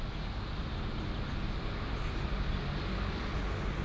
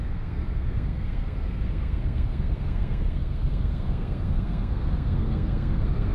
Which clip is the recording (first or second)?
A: first